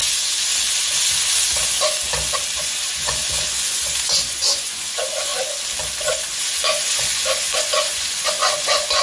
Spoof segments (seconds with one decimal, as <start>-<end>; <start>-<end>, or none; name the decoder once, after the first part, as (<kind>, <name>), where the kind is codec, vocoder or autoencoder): 0.0-0.5 (vocoder, Vocos); 2.6-5.3; 6.2-9.0